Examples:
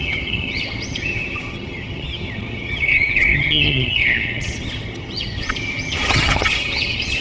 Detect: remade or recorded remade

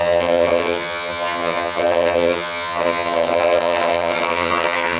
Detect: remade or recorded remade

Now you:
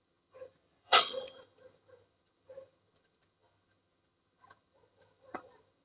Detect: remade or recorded remade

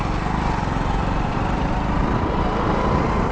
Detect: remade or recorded recorded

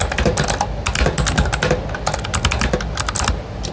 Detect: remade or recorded recorded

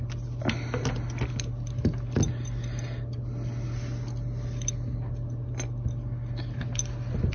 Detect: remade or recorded recorded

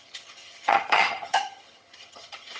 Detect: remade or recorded remade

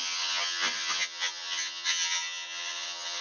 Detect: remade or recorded remade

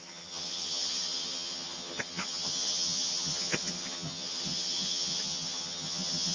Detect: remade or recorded remade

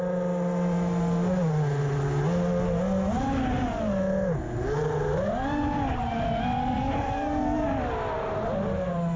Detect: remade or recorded recorded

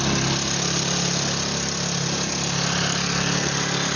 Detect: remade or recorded recorded